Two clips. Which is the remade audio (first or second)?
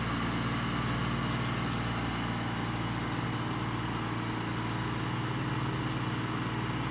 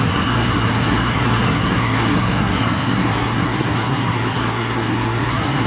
second